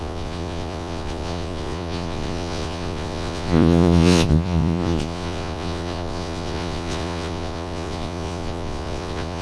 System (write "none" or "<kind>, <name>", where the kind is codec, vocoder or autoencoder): vocoder, Vocos